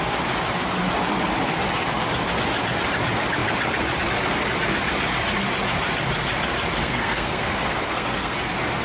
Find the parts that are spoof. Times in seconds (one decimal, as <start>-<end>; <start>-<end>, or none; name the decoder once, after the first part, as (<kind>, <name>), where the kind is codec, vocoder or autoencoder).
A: 6.8-8.3 (codec, SNAC)